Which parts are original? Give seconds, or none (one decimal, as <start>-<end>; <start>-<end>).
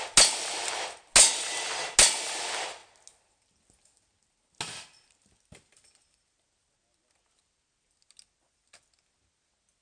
0.0-9.8